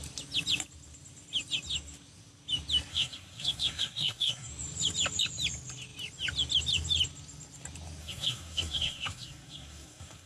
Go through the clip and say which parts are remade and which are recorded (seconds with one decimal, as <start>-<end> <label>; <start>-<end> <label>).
0.0-2.9 recorded; 2.9-4.5 remade; 4.5-8.0 recorded; 8.0-10.3 remade